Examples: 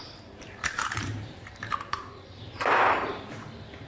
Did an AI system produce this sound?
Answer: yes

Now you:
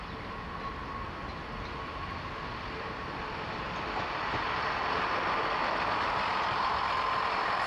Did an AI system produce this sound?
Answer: no